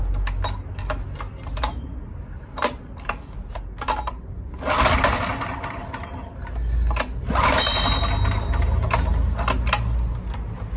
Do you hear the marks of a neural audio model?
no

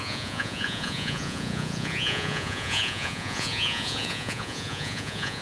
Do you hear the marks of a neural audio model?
yes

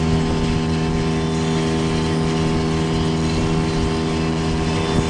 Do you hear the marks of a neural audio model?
no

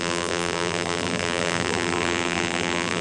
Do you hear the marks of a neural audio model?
yes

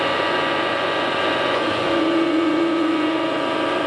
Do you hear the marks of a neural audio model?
yes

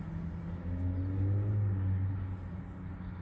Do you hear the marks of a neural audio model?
no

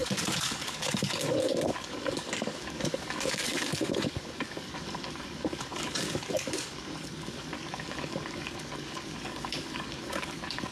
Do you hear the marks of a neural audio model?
yes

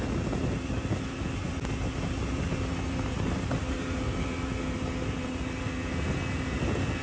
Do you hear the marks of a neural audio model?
no